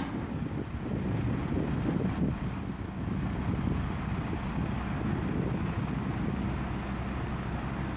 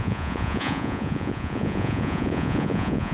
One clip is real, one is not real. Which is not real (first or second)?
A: second